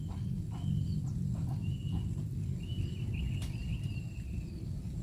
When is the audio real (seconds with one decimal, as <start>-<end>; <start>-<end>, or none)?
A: 0.0-1.6; 2.3-5.0